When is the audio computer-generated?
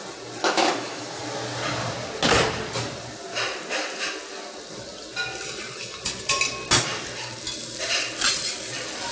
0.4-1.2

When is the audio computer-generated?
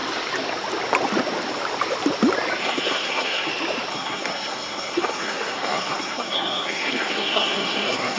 2.6-3.5; 3.9-8.2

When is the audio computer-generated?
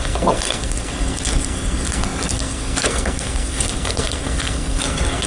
0.0-5.3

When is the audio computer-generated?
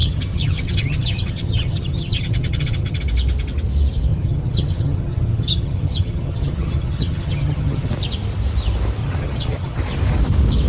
0.0-3.0; 4.1-7.9; 9.0-9.8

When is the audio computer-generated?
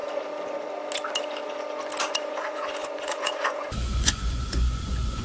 2.1-5.2